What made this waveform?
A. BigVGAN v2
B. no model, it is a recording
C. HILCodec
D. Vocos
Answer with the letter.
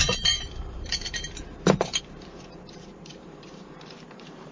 A